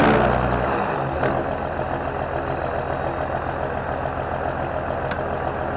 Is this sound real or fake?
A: real